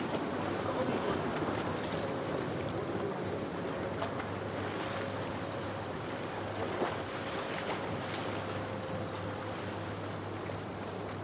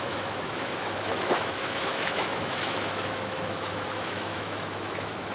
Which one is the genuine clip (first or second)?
first